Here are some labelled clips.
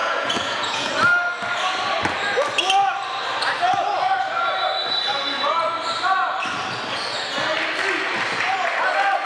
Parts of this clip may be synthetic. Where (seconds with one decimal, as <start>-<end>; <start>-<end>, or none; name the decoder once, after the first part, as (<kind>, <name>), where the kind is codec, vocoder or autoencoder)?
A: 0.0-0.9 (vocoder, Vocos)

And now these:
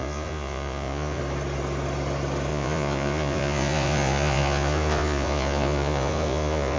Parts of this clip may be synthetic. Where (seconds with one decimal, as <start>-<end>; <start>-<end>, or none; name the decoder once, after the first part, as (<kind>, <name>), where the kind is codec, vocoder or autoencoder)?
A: 0.0-1.2 (vocoder, Vocos); 2.5-6.8

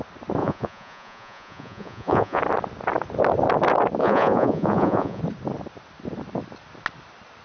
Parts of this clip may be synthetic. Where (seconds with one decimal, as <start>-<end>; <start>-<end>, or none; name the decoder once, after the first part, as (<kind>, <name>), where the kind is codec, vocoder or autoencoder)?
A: 0.4-2.4 (vocoder, Vocos); 4.0-5.2

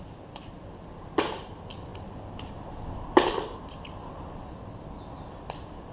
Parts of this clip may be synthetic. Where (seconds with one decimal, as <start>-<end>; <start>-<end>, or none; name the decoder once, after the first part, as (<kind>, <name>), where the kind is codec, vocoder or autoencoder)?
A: none

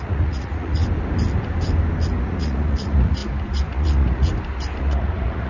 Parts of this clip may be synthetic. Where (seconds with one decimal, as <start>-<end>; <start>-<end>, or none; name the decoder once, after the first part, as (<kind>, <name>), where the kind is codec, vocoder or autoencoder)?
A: 0.0-0.8 (vocoder, Vocos); 2.2-3.2; 3.7-4.3; 4.8-5.5

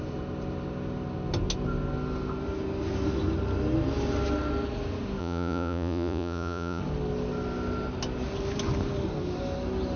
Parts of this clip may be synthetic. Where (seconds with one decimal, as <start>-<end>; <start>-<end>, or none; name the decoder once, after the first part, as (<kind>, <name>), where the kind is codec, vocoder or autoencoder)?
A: 5.2-6.8 (vocoder, Vocos)

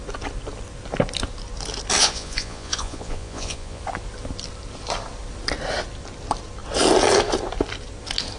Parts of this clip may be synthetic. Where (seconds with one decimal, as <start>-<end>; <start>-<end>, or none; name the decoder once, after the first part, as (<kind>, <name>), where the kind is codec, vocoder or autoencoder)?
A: 2.0-3.8 (vocoder, Vocos)

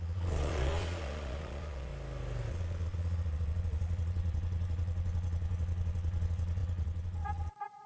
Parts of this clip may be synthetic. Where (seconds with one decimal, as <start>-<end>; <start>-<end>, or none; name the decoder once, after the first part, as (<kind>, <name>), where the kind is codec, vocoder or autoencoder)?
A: 0.0-1.9 (vocoder, Vocos); 2.5-7.9